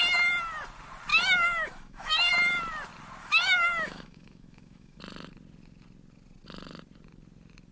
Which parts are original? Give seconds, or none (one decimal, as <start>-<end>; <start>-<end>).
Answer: 0.0-1.1; 2.3-3.2; 5.0-7.7